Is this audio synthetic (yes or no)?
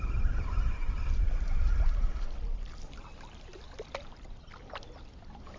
no